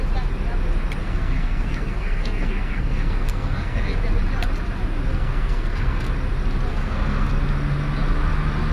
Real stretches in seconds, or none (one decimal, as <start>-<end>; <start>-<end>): 0.0-1.0; 4.0-5.1; 6.1-6.7; 7.3-8.7